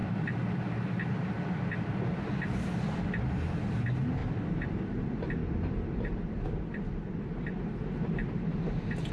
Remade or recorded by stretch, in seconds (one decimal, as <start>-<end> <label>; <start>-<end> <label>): 0.0-4.2 recorded; 4.2-4.8 remade; 4.8-5.4 recorded; 5.4-6.6 remade; 6.6-9.1 recorded